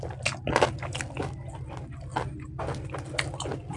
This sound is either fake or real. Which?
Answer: real